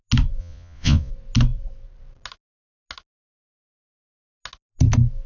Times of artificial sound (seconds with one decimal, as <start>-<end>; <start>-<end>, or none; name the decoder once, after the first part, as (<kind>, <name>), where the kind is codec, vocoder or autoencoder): 0.4-1.1 (vocoder, Vocos)